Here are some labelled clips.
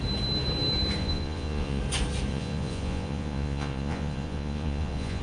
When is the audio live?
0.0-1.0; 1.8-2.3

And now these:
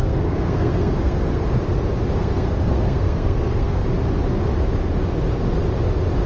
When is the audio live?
1.4-2.2; 3.8-6.3